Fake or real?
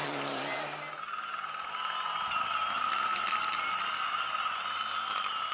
real